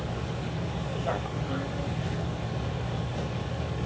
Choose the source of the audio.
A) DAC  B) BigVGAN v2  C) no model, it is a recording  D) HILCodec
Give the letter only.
A